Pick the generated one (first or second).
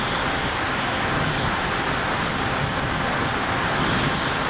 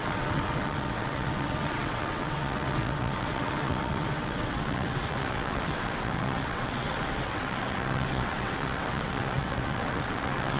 second